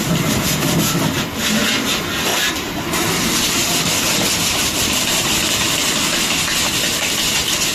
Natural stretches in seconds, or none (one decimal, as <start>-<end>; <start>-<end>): 0.0-2.3; 3.1-7.7